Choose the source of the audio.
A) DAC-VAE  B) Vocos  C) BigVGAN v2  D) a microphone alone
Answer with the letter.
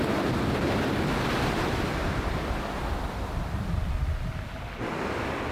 D